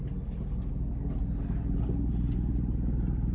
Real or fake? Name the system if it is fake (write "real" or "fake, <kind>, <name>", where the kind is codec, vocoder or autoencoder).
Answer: real